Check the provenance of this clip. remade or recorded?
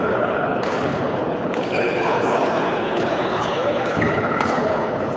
remade